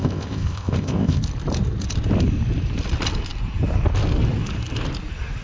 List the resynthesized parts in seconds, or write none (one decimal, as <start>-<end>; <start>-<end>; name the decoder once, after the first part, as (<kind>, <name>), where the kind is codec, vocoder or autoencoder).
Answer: 0.0-1.2 (codec, ZipCodec)